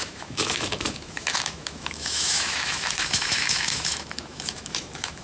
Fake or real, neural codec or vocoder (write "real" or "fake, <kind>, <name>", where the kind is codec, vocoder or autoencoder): fake, autoencoder, DAC-VAE